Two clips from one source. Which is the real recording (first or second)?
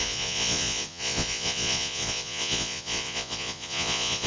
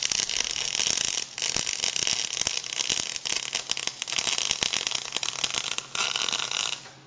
second